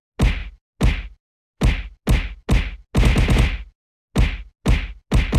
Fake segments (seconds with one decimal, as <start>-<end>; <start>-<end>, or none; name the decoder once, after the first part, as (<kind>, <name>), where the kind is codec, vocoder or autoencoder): none